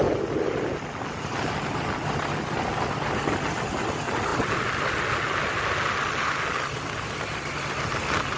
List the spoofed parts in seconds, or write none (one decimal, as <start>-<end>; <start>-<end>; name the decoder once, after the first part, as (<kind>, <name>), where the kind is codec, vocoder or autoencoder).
4.3-5.0 (vocoder, BigVGAN v2)